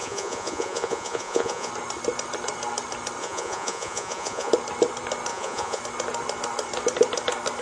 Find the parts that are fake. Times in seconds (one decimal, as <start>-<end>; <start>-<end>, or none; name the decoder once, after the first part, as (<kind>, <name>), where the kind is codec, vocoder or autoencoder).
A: 0.0-1.7 (vocoder, Vocos); 3.2-4.5; 5.3-5.8